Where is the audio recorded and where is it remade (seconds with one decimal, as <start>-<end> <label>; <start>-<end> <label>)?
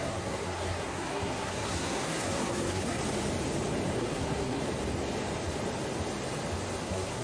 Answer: 0.0-3.0 remade; 3.0-4.0 recorded; 4.0-4.6 remade; 4.6-6.8 recorded; 6.8-7.2 remade